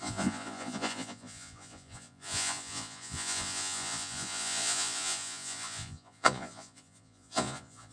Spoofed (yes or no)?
yes